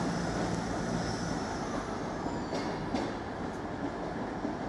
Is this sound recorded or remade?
recorded